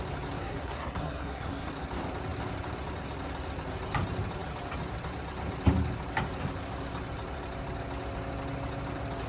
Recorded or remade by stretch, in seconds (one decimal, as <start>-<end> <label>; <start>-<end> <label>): 0.0-0.4 recorded; 0.4-1.7 remade; 1.7-9.3 recorded